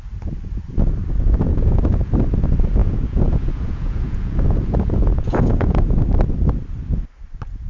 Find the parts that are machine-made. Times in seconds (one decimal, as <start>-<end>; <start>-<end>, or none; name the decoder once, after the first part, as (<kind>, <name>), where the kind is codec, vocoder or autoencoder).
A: 1.5-2.1 (vocoder, Vocos); 2.8-6.0